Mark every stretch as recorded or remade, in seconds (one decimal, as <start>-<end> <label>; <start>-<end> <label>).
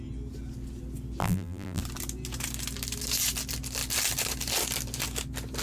0.0-1.2 recorded; 1.2-1.8 remade; 1.8-5.6 recorded